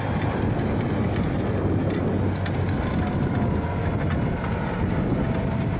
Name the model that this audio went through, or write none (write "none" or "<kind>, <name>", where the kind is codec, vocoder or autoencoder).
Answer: none